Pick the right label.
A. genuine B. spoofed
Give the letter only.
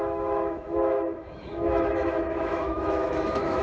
B